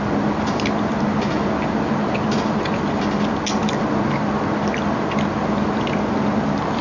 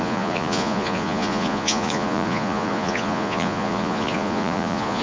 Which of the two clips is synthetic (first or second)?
second